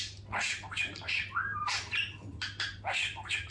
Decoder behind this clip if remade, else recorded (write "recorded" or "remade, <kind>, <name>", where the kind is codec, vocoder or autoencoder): recorded